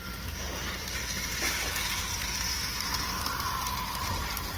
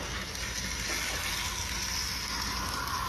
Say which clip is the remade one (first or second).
first